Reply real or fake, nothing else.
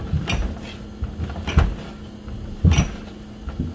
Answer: real